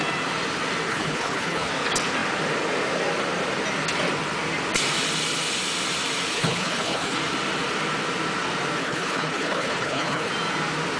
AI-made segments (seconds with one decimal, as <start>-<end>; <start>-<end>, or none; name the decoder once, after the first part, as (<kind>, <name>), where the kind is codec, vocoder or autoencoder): 0.9-1.7 (codec, HILCodec); 6.3-7.2; 8.8-10.3